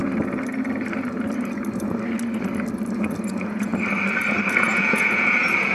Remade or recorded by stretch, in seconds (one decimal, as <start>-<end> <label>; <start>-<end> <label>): 0.0-3.3 recorded; 3.3-3.7 remade; 3.7-4.5 recorded; 4.5-5.7 remade